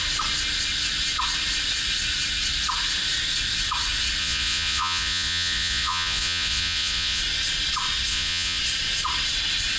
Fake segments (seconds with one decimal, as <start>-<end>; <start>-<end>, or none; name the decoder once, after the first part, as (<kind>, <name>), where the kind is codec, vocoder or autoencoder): 4.2-7.2 (vocoder, Vocos); 8.1-8.6